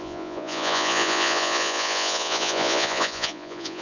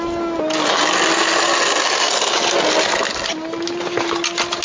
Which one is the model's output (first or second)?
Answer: first